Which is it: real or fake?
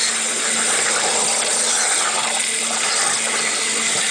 real